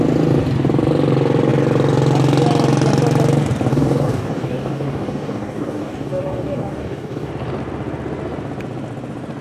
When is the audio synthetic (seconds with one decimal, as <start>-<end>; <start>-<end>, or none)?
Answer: 3.7-7.3